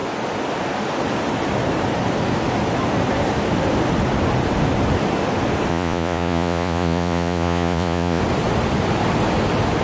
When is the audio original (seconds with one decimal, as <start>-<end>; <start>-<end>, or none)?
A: 0.0-5.7; 8.2-9.8